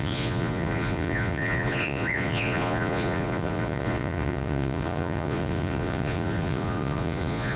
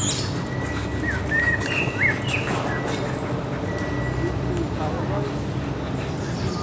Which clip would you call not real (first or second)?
first